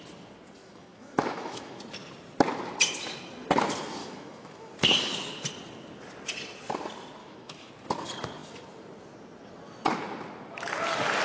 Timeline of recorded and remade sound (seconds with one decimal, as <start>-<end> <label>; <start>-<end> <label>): 0.0-0.6 recorded; 0.6-1.8 remade; 1.8-4.0 recorded; 4.0-4.7 remade; 4.7-7.2 recorded; 7.2-7.7 remade; 7.7-11.2 recorded